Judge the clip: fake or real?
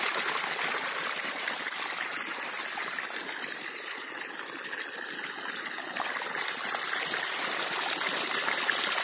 fake